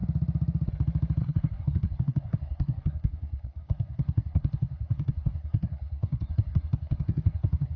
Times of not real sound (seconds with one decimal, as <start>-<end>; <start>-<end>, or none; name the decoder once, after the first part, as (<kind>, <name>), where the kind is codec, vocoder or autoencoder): 1.2-7.8 (codec, SNAC)